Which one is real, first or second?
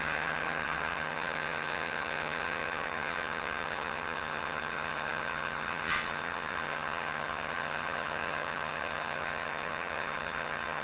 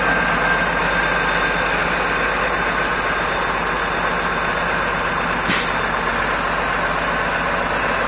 second